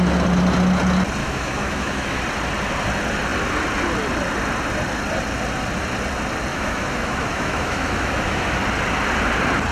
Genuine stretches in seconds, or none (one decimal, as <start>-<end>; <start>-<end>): 0.0-1.2; 2.2-6.5; 8.6-9.7